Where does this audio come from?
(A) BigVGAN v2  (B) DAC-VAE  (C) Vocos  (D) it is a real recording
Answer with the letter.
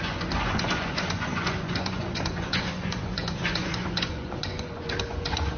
C